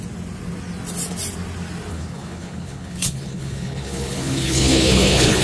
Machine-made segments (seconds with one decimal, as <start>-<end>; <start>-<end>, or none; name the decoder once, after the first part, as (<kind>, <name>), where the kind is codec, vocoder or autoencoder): 1.9-5.4 (codec, HILCodec)

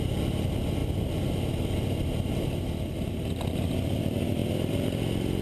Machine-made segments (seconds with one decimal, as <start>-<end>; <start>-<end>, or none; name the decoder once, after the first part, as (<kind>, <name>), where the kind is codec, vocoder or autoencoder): none

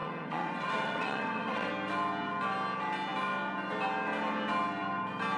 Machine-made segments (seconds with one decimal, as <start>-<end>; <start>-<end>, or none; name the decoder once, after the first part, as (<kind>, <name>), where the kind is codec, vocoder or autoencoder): 0.0-1.7 (vocoder, WaveNeXt)

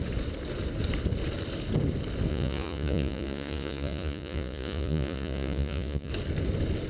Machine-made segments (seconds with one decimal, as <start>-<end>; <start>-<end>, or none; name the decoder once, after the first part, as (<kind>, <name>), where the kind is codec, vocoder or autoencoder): 2.3-6.1 (vocoder, Vocos)

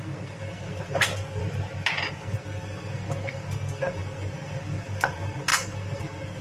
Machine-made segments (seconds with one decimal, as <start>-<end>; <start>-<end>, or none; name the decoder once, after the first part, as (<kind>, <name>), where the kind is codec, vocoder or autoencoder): 0.0-1.4 (codec, SNAC); 2.1-6.4

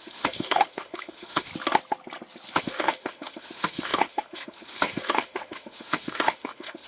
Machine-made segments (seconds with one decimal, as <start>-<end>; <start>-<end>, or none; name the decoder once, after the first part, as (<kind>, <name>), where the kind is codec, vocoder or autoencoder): 0.0-1.5 (autoencoder, DAC-VAE); 2.6-6.9